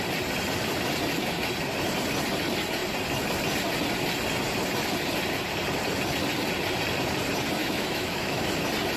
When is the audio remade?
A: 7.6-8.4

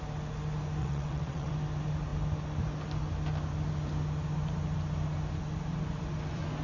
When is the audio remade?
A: 0.8-1.5

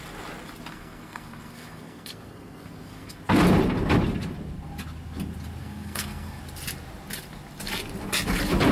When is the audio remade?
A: 0.7-3.2; 5.6-6.4

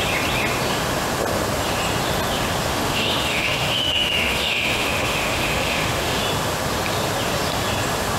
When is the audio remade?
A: 2.7-6.2

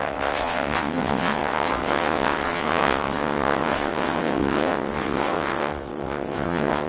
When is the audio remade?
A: 0.0-6.9